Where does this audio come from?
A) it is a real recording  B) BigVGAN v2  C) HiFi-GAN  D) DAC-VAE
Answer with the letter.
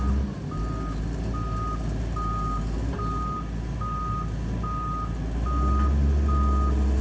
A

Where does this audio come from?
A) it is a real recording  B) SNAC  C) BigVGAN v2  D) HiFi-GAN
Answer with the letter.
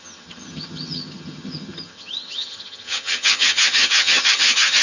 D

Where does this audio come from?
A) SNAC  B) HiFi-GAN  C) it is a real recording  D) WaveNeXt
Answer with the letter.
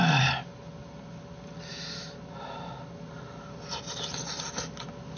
C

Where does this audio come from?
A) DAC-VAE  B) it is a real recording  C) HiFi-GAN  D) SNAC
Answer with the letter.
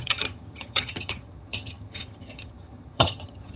C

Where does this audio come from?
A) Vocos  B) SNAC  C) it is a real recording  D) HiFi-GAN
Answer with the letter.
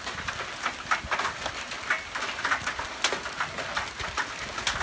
C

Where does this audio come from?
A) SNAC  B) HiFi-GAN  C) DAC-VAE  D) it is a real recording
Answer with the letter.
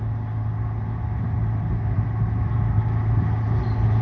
D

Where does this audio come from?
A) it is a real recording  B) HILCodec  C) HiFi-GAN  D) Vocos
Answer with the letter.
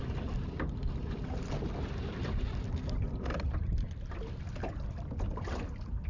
A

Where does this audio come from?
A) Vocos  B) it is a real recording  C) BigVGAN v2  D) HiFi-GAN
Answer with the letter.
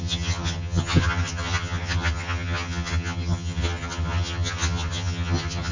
D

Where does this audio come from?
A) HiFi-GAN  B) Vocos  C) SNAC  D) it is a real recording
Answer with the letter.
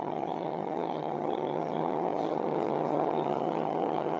A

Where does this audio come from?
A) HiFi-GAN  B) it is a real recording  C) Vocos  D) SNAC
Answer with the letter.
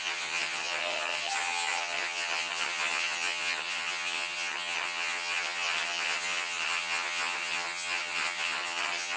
A